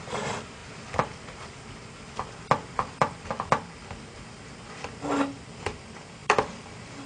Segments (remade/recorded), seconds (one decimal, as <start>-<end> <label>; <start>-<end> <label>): 0.0-7.1 recorded